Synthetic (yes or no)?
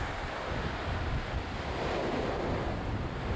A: no